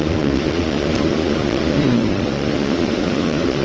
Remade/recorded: remade